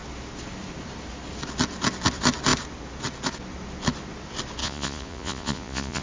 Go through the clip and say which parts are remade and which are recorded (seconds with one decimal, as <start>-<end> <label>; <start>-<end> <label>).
0.0-4.6 recorded; 4.6-6.0 remade